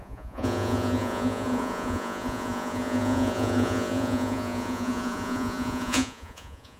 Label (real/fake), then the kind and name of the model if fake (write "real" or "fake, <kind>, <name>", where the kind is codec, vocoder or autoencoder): fake, vocoder, Vocos